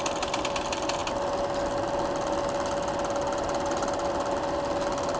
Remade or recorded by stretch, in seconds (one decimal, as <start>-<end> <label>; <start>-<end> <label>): 0.0-5.2 recorded